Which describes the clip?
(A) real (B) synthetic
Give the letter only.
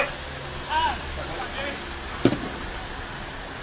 A